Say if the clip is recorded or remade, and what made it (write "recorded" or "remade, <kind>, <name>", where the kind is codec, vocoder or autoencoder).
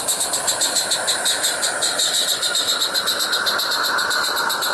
recorded